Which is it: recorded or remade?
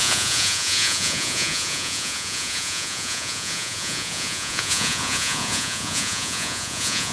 remade